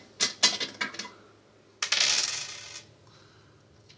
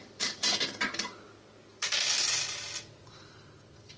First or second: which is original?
first